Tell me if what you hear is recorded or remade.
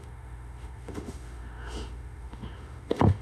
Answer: remade